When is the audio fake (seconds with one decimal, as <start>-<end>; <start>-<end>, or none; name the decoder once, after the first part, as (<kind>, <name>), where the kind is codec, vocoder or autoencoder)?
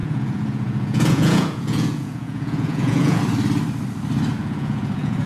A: 0.0-3.2 (vocoder, Vocos); 4.4-5.3